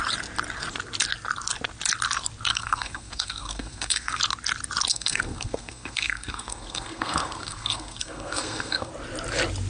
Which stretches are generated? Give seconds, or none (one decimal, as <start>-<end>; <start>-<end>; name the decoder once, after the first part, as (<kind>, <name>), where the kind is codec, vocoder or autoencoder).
2.5-4.2 (codec, SNAC); 4.9-8.9